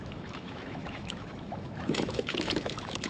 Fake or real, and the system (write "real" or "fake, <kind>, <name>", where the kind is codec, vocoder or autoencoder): fake, autoencoder, DAC-VAE